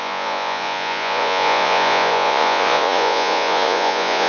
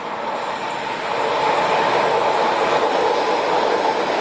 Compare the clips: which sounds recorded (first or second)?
second